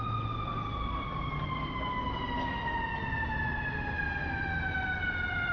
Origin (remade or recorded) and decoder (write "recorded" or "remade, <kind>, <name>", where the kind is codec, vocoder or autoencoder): recorded